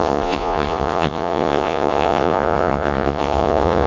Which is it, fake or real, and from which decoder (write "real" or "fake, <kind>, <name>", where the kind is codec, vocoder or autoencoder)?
fake, vocoder, Vocos